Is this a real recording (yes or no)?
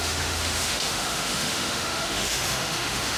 no